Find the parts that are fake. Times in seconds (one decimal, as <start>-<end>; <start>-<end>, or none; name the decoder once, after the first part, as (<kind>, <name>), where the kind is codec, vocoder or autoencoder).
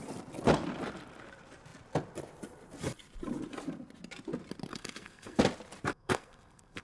4.7-5.4 (codec, SNAC); 5.9-6.8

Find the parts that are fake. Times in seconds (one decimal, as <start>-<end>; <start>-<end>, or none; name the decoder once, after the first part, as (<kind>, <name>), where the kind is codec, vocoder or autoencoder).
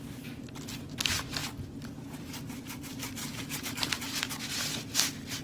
3.2-3.9 (codec, DAC)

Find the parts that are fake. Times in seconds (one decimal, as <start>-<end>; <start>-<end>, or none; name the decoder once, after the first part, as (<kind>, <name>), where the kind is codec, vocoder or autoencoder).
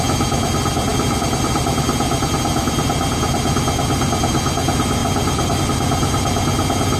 5.0-5.6 (vocoder, BigVGAN v2)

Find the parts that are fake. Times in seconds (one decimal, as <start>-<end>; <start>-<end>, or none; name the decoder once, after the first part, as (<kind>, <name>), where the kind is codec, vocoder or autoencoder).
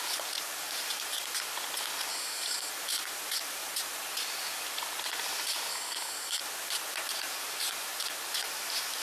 2.1-2.7 (codec, DAC); 5.7-6.4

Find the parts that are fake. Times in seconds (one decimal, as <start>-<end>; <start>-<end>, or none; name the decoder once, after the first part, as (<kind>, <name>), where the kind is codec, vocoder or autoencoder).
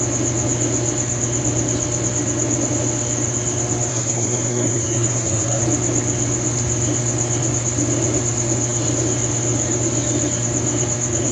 3.9-5.6 (codec, SNAC)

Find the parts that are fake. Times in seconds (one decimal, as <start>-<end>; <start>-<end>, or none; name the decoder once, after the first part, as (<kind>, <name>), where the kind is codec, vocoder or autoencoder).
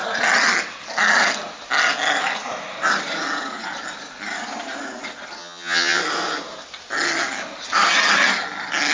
5.4-6.0 (vocoder, HiFi-GAN)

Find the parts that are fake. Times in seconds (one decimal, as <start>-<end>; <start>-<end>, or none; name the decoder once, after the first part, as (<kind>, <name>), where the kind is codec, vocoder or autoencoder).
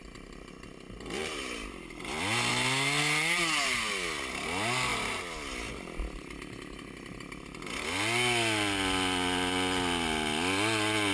none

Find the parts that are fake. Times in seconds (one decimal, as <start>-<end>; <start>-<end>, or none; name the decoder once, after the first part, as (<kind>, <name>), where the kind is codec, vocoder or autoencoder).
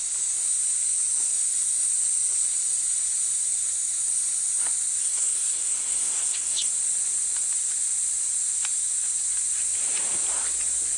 5.0-6.7 (codec, SNAC)